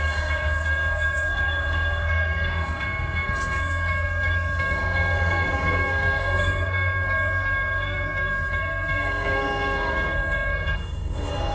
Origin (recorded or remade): remade